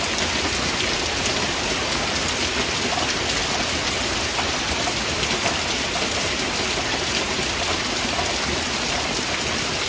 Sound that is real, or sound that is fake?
real